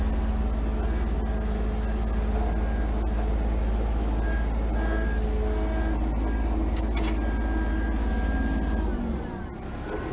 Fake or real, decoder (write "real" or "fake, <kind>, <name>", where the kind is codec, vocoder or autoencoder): real